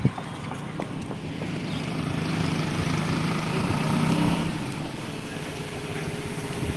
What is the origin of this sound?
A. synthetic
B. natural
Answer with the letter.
B